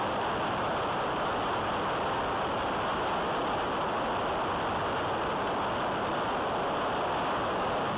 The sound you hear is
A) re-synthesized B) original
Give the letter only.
B